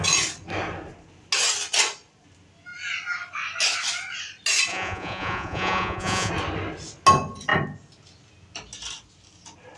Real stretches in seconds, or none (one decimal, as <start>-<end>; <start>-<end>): 0.0-4.7; 6.3-9.8